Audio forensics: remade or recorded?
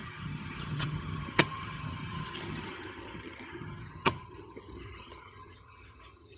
remade